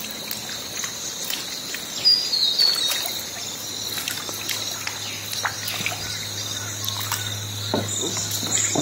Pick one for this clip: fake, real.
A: real